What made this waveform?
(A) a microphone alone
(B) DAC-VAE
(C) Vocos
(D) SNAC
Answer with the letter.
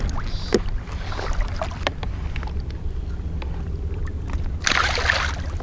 A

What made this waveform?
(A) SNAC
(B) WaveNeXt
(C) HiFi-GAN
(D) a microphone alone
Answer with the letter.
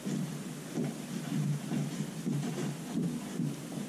D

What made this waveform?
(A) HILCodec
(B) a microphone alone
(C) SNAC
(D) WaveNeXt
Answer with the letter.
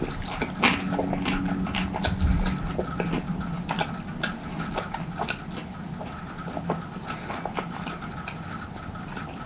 B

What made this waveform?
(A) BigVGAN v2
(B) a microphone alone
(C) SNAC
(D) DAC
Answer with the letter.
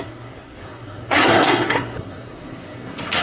C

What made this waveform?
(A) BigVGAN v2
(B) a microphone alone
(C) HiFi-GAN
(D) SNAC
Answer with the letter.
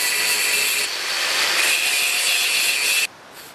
B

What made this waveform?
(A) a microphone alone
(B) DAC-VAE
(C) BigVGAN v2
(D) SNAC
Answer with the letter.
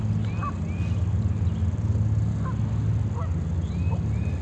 A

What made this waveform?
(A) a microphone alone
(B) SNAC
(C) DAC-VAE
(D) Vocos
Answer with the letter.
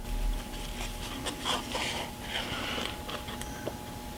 A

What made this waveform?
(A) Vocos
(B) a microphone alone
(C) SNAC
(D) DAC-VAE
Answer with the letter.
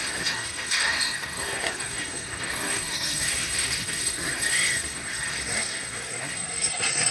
C